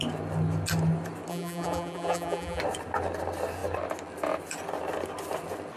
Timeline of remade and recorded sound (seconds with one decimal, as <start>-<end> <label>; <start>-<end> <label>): 0.0-1.3 recorded; 1.3-2.6 remade; 2.6-5.8 recorded